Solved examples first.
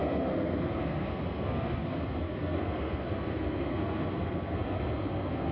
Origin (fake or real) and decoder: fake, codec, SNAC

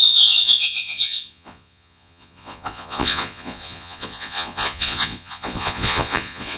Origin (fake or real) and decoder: fake, vocoder, Vocos